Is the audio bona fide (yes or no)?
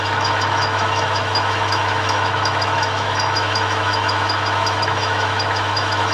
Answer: no